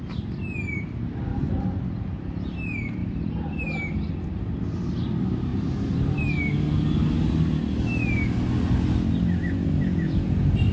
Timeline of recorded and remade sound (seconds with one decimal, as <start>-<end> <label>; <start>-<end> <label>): 0.0-1.3 recorded; 1.3-1.8 remade; 1.8-3.0 recorded; 3.0-3.6 remade; 3.6-5.5 recorded; 5.5-6.2 remade; 6.2-10.7 recorded